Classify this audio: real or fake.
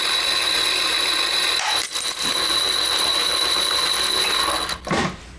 real